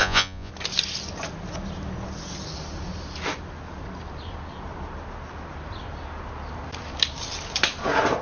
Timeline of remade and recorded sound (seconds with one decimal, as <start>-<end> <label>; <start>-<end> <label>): 0.0-0.5 remade; 0.5-8.2 recorded